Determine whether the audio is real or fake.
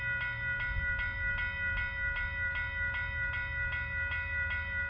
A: real